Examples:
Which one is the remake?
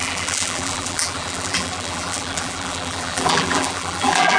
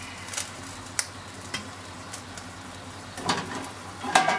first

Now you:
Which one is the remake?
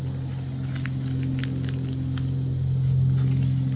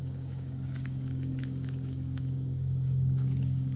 second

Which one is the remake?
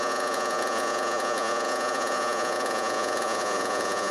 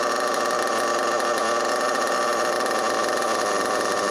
first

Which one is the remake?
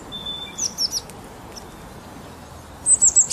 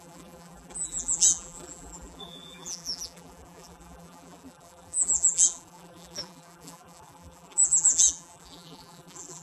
second